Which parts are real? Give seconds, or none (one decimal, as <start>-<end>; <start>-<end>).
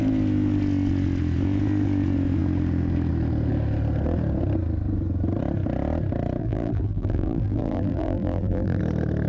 0.0-6.4; 8.8-9.3